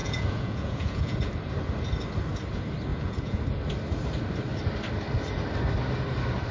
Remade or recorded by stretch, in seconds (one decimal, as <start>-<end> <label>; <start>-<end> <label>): 0.0-1.3 remade; 1.3-2.9 recorded; 2.9-3.4 remade; 3.4-6.5 recorded